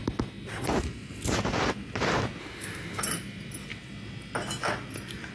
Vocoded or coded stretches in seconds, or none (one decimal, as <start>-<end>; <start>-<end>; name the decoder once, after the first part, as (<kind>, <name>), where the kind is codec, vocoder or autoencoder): 2.4-3.0 (autoencoder, DAC-VAE)